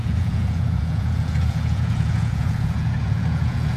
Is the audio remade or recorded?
remade